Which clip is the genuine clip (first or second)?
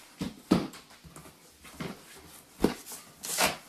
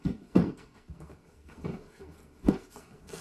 first